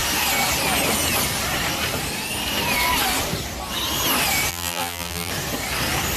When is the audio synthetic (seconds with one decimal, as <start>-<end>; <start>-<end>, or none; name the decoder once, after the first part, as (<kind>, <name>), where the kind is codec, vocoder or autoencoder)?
4.5-5.3 (vocoder, BigVGAN v2)